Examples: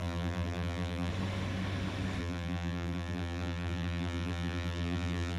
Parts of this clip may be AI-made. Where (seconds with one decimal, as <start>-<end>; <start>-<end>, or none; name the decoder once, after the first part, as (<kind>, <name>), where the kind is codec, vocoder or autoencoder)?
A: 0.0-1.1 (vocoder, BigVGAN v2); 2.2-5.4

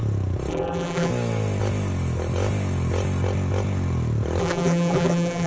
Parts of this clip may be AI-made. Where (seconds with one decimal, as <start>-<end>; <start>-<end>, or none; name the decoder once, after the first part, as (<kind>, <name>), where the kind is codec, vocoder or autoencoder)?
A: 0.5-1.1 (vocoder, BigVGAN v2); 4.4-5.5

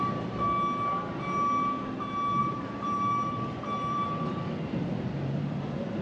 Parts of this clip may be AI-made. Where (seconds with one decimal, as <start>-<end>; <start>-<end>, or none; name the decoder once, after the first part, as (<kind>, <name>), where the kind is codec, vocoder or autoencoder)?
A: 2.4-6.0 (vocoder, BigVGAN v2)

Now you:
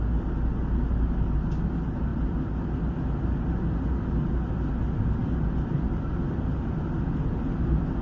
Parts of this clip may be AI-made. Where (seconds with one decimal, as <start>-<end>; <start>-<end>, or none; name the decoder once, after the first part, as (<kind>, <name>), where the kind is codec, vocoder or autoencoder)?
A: 2.1-2.7 (vocoder, BigVGAN v2); 5.2-7.0

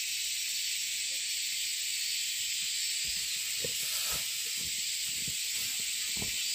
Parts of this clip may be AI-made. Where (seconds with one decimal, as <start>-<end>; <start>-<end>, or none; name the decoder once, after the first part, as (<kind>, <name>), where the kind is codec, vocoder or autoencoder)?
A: 2.2-5.1 (vocoder, BigVGAN v2)

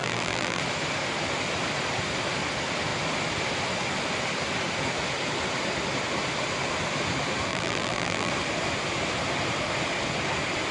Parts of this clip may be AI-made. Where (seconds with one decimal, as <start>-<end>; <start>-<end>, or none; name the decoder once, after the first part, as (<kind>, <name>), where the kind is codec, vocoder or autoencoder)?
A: 0.0-0.6 (vocoder, BigVGAN v2); 7.5-8.3

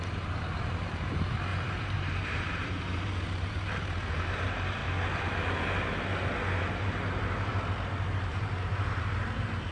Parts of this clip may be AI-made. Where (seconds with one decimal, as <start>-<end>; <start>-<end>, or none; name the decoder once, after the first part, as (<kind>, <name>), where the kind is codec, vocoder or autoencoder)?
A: 0.0-4.8 (vocoder, BigVGAN v2); 6.6-7.5; 8.3-9.7